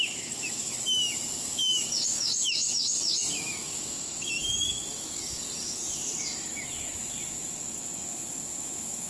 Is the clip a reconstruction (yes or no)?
yes